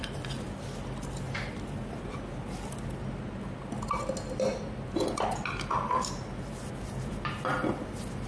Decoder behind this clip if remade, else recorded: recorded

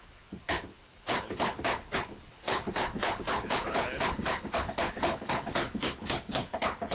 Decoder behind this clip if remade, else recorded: remade, codec, HILCodec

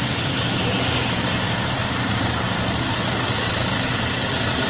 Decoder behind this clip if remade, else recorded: remade, vocoder, BigVGAN v2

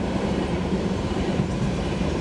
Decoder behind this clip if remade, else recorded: remade, vocoder, BigVGAN v2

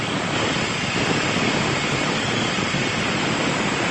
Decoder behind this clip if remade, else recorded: recorded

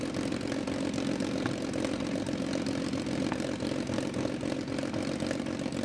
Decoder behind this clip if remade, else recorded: recorded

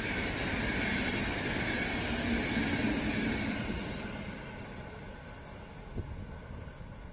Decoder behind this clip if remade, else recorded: recorded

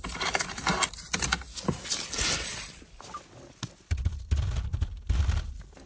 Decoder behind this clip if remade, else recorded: recorded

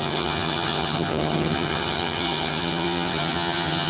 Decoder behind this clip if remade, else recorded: remade, vocoder, HiFi-GAN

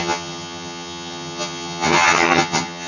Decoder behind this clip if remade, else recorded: remade, vocoder, HiFi-GAN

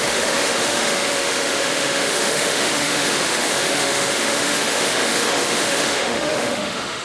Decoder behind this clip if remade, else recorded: remade, autoencoder, DAC-VAE